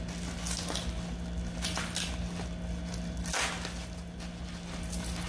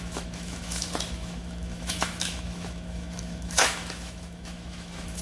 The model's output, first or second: second